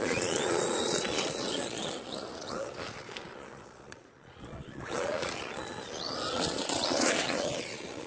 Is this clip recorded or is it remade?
remade